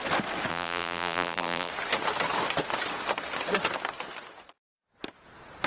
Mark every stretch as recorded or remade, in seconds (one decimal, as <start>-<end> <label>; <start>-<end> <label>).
0.0-0.5 recorded; 0.5-1.7 remade; 1.7-5.7 recorded